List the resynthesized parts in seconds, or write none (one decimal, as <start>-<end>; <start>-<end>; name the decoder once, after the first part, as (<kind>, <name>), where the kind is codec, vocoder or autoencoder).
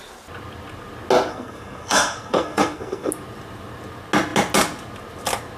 1.3-3.1 (codec, SNAC)